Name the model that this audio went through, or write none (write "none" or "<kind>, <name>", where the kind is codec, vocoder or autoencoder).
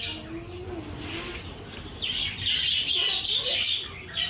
none